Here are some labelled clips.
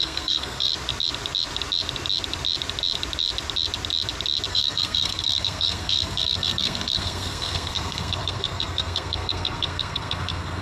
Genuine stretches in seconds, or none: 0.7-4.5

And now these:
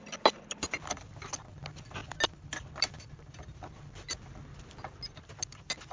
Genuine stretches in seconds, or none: 0.0-5.9

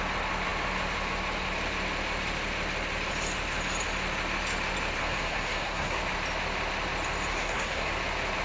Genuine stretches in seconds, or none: 0.0-5.0; 6.0-7.3; 7.9-8.4

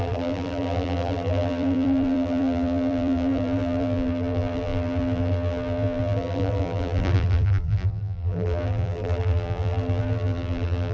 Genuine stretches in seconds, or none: none